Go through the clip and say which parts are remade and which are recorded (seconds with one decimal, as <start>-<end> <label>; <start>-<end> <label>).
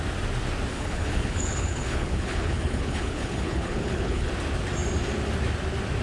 0.0-0.7 recorded; 0.7-4.3 remade; 4.3-6.0 recorded